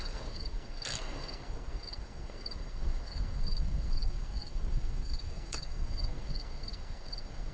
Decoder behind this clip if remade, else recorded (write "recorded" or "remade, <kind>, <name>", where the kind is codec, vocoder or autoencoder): remade, codec, SNAC